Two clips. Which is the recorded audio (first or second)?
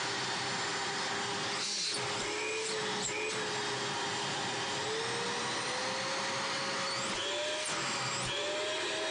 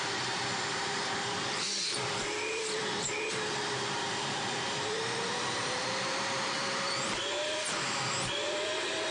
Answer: first